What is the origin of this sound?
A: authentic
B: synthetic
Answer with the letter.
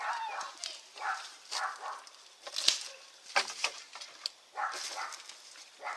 A